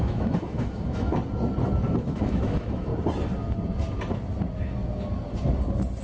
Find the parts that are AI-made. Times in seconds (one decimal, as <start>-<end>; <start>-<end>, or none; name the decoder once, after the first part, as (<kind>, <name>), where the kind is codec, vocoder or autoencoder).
0.0-1.1 (autoencoder, DAC-VAE); 2.0-2.9